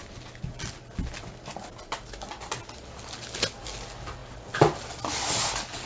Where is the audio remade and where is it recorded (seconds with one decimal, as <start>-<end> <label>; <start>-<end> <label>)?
0.0-5.9 recorded